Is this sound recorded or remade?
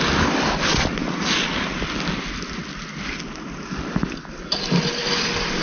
recorded